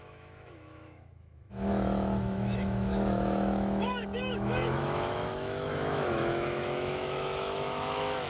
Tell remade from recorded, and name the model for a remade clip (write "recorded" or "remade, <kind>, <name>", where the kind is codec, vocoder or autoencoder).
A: remade, autoencoder, DAC-VAE